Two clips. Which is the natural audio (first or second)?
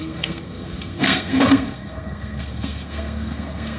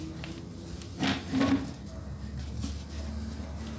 second